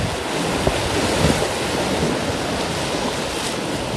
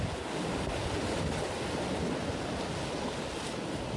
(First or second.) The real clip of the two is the first